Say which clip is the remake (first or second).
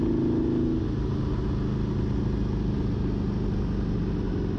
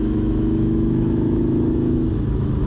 second